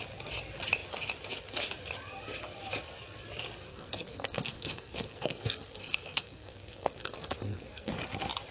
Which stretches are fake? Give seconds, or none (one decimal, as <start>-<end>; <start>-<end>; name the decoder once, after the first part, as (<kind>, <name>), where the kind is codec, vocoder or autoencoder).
3.7-7.9 (codec, SNAC)

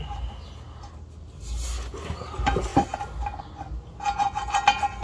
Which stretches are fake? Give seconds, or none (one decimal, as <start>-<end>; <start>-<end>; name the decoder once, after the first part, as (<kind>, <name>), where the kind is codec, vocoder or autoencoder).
none

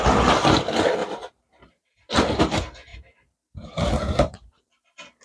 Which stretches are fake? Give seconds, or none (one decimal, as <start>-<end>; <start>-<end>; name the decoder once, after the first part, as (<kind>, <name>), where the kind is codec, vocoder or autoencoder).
1.0-2.4 (vocoder, BigVGAN v2); 2.9-4.6